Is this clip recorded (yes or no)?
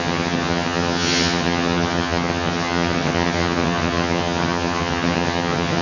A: no